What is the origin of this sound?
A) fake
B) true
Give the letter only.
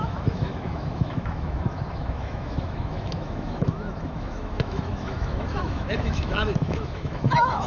A